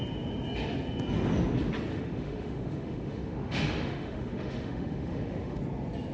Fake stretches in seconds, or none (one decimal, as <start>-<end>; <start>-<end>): 1.9-5.6